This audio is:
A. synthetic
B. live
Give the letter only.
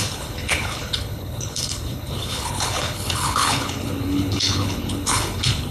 A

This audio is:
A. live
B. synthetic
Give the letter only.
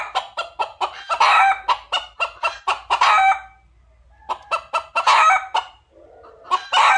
A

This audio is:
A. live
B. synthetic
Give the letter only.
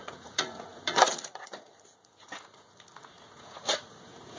B